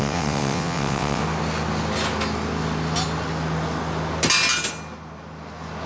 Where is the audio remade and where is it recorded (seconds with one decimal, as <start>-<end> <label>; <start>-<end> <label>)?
0.0-1.2 remade; 1.2-5.9 recorded